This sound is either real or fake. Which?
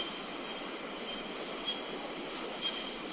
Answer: real